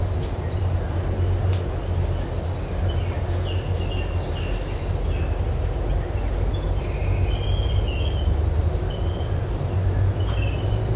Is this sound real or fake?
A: real